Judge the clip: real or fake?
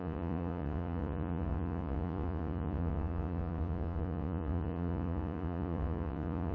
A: fake